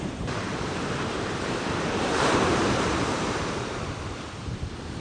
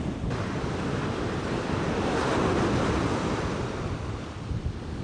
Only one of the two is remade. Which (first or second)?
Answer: first